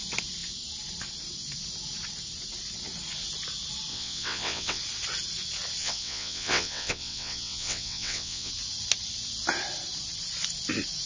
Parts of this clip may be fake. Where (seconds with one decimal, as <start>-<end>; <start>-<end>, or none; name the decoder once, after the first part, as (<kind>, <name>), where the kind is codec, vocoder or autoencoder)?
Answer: 3.9-4.8 (vocoder, WaveNeXt); 5.8-8.5